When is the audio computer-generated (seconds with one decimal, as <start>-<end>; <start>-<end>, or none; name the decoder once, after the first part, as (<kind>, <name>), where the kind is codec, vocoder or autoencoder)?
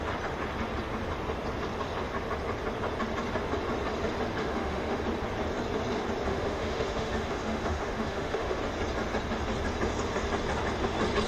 4.4-5.0 (autoencoder, DAC-VAE); 6.3-8.6